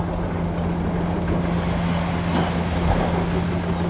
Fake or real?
real